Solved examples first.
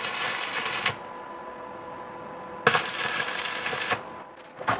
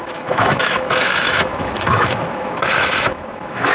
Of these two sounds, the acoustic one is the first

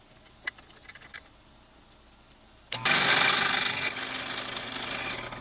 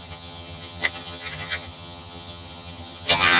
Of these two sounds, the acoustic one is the first